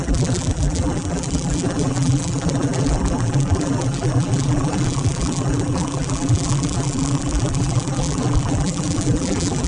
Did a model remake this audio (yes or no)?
yes